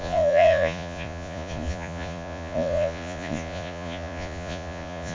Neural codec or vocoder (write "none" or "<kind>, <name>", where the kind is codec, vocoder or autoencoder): vocoder, Vocos